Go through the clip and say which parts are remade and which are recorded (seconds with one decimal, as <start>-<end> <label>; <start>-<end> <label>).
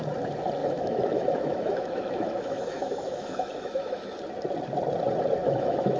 0.0-0.6 recorded; 0.6-4.2 remade; 4.2-5.4 recorded; 5.4-6.0 remade